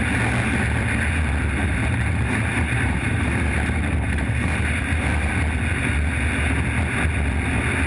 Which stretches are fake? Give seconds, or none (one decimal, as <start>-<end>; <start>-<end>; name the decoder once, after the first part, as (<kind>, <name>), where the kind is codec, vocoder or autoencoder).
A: 1.6-5.0 (vocoder, BigVGAN v2)

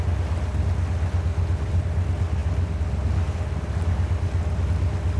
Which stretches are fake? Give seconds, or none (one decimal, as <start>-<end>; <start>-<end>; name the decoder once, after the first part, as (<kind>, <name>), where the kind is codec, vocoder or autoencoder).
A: none

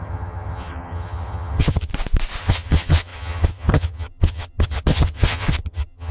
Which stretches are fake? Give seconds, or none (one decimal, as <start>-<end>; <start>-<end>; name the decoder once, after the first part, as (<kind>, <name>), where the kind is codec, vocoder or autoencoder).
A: 0.0-1.9 (vocoder, HiFi-GAN); 2.4-6.1

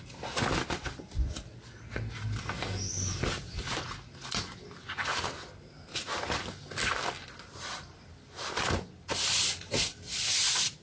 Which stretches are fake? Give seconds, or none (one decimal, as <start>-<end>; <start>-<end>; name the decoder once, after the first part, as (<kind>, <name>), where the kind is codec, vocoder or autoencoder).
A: none

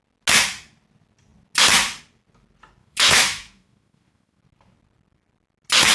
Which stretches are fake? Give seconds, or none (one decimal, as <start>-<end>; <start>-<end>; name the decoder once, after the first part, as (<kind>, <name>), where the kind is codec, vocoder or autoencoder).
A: 2.8-4.4 (autoencoder, DAC-VAE)

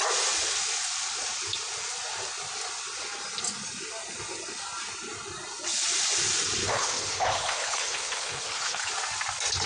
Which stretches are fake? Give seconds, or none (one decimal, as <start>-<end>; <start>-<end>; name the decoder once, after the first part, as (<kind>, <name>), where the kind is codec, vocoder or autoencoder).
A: 6.6-8.9 (codec, HILCodec)

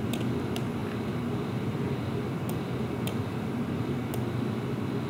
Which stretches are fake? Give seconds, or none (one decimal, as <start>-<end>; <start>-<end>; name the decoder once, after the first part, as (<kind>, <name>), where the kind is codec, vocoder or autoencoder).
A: none

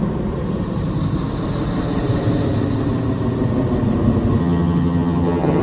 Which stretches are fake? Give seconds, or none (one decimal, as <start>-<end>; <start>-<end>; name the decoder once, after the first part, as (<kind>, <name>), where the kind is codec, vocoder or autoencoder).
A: 4.4-5.6 (vocoder, HiFi-GAN)